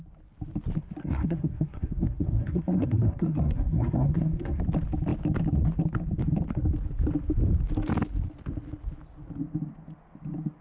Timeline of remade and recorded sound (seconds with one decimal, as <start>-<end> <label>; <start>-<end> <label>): 0.0-1.0 recorded; 1.0-4.6 remade; 4.6-10.6 recorded